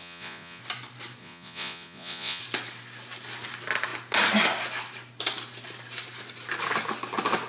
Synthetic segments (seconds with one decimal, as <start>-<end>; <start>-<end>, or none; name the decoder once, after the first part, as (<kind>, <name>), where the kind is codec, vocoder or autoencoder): 0.0-0.6 (vocoder, Vocos); 1.2-2.4